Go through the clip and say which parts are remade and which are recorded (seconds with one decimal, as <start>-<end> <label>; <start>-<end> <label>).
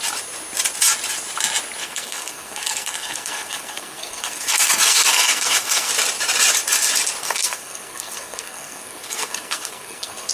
0.0-1.8 recorded; 1.8-5.9 remade; 5.9-7.2 recorded; 7.2-10.3 remade